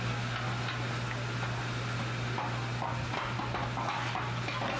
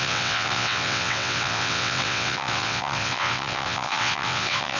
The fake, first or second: second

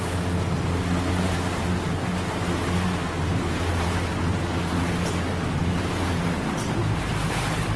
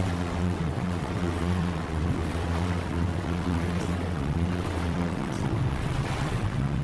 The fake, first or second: second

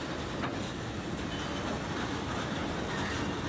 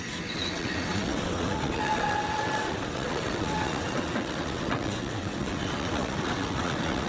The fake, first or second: second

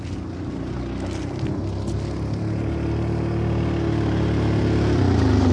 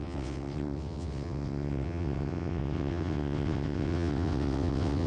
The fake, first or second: second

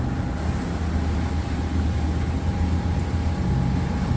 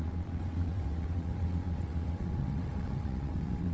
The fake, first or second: second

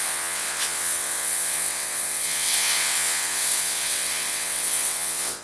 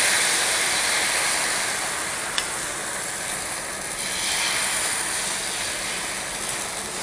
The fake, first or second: first